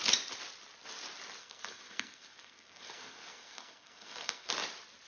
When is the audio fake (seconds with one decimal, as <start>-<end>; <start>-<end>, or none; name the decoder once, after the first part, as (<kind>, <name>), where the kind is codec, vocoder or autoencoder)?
1.4-4.5 (codec, SNAC)

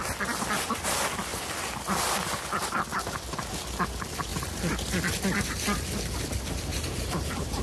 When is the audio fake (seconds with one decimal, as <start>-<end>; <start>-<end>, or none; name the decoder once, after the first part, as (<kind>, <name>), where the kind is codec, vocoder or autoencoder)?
6.7-7.6 (vocoder, BigVGAN v2)

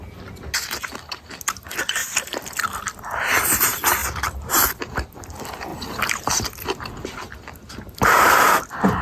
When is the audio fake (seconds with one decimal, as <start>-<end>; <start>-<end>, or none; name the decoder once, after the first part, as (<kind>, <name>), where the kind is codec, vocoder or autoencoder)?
2.0-2.8 (vocoder, BigVGAN v2)

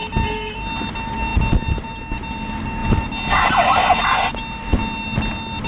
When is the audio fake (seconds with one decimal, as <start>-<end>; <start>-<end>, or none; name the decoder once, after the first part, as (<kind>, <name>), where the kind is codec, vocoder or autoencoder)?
none